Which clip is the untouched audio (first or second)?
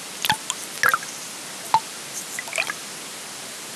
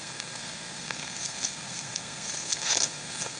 first